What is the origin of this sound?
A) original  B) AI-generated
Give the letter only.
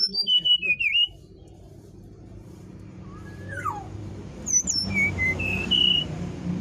B